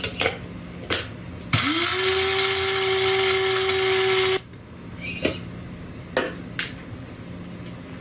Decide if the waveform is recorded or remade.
recorded